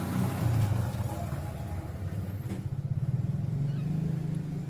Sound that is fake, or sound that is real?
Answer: real